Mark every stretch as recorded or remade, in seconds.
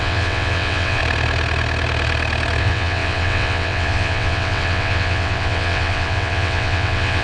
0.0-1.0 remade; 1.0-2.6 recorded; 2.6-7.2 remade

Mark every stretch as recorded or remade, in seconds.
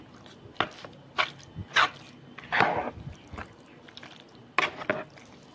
0.0-5.5 recorded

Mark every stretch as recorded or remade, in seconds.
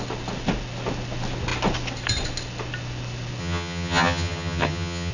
0.0-3.4 recorded; 3.4-5.1 remade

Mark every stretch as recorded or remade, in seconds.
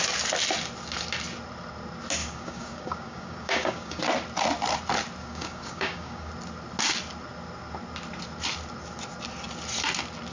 0.0-2.2 recorded; 2.2-4.0 remade; 4.0-5.2 recorded; 5.2-6.3 remade; 6.3-10.3 recorded